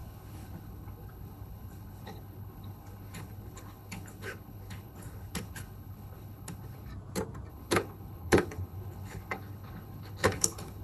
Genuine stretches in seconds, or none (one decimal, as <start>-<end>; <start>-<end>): 6.9-7.5